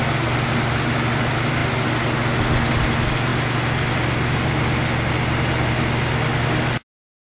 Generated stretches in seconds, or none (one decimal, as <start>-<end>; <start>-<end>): none